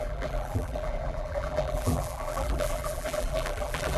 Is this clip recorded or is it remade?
remade